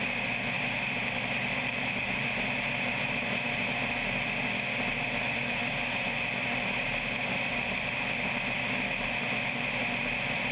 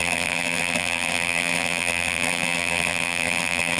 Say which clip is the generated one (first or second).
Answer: second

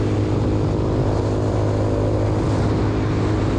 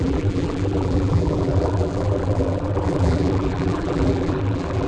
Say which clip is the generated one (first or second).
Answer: second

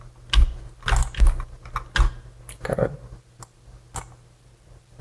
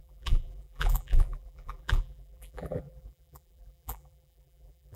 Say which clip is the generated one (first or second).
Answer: second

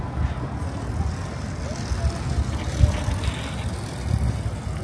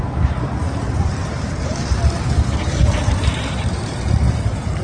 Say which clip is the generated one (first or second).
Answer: second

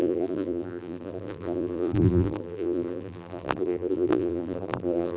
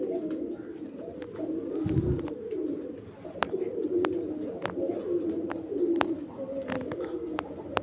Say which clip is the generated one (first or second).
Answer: first